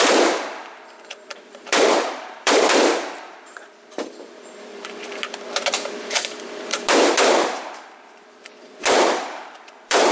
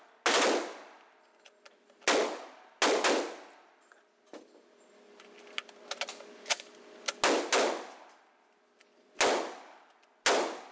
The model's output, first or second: first